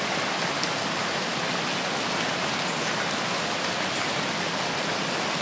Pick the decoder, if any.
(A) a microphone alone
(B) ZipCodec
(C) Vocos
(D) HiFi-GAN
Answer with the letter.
A